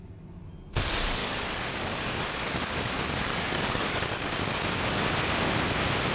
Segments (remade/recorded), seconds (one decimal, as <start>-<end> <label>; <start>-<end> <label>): 0.0-1.2 recorded; 1.2-4.6 remade; 4.6-6.1 recorded